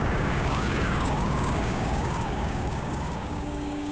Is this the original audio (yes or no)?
no